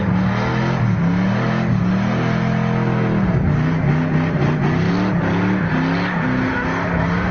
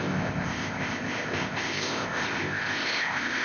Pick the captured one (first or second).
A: first